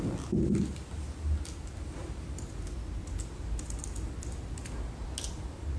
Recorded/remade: recorded